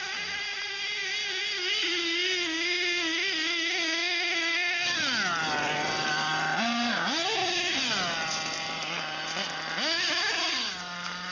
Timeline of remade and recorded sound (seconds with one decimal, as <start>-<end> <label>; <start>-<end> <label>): 0.0-11.3 recorded